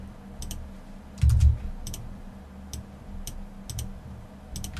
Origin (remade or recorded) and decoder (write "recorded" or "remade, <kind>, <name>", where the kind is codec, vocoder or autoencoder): recorded